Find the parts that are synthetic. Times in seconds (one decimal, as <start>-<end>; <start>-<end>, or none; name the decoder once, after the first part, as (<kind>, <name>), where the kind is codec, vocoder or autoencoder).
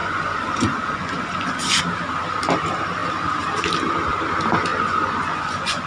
0.0-1.8 (vocoder, Vocos); 4.7-5.9